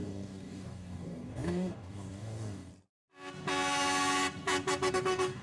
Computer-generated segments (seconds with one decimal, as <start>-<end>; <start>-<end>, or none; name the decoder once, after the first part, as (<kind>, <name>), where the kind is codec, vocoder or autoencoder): 0.0-2.7 (codec, DAC); 4.9-5.4